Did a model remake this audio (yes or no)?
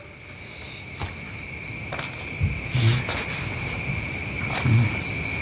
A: no